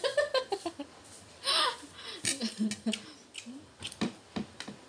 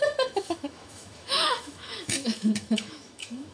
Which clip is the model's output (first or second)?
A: second